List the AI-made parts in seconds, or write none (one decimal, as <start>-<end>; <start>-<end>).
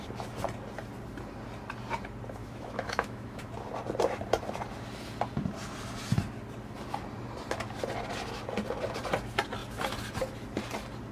2.4-3.5